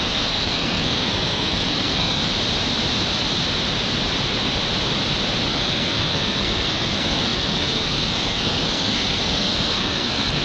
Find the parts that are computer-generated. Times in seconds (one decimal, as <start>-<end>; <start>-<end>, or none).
0.0-2.3; 5.5-10.4